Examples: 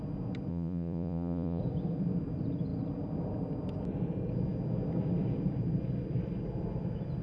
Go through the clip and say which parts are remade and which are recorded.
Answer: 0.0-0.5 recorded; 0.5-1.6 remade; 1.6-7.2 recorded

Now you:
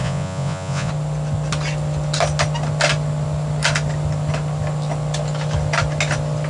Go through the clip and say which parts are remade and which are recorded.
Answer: 0.0-0.9 remade; 0.9-6.5 recorded

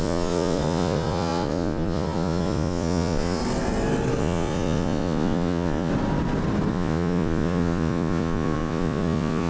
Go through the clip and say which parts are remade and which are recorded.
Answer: 0.0-3.4 remade; 3.4-4.2 recorded; 4.2-5.9 remade; 5.9-6.7 recorded; 6.7-9.5 remade

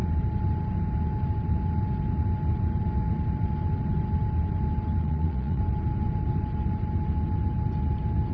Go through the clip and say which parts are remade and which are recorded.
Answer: 0.0-5.0 recorded; 5.0-5.6 remade; 5.6-8.3 recorded

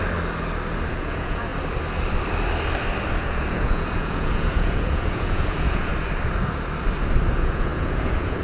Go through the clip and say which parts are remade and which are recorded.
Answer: 0.0-0.9 recorded; 0.9-1.5 remade; 1.5-3.2 recorded; 3.2-5.9 remade; 5.9-7.3 recorded; 7.3-8.4 remade